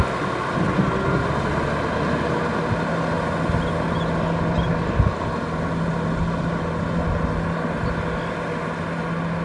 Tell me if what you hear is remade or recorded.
recorded